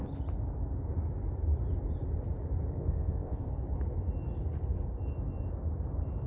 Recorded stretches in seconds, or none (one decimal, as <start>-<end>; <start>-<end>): 0.0-2.7; 3.5-6.3